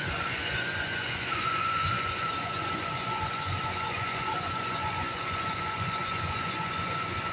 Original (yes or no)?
no